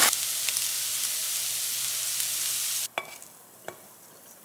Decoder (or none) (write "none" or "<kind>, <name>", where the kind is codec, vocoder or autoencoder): none